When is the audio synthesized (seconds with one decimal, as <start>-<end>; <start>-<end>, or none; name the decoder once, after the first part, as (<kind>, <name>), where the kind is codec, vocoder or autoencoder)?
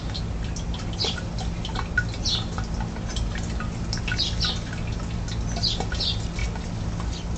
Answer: none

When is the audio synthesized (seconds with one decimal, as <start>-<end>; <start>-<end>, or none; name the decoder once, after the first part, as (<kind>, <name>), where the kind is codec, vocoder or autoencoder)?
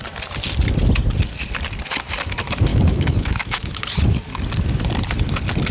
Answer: 2.7-3.8 (autoencoder, DAC-VAE)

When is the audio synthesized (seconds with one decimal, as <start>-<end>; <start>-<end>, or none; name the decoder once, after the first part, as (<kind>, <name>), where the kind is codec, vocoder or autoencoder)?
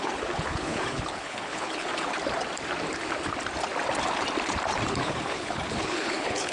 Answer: 0.0-1.9 (codec, HILCodec); 4.9-6.5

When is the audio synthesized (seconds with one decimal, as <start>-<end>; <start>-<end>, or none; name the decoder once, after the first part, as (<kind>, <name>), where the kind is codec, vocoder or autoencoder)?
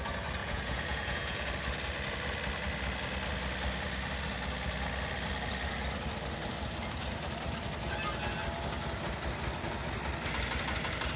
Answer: 0.4-1.5 (vocoder, Vocos)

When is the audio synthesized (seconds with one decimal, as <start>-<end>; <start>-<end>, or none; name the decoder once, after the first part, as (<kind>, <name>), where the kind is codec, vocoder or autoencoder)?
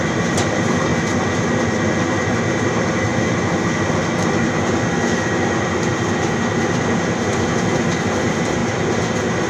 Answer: 0.0-0.9 (vocoder, BigVGAN v2); 2.3-3.1; 8.2-9.5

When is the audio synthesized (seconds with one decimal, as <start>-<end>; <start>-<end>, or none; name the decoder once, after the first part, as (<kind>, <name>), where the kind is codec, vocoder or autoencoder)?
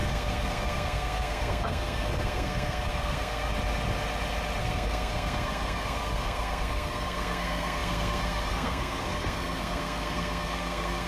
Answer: 0.0-3.5 (codec, SNAC); 4.6-11.1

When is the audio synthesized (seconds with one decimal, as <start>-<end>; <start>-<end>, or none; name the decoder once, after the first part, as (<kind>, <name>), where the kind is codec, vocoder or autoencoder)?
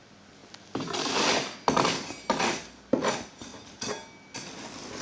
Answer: none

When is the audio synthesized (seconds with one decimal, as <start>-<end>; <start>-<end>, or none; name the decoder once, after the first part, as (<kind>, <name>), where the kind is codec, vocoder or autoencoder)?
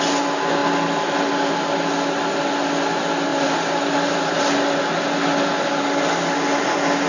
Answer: 3.3-4.4 (vocoder, BigVGAN v2)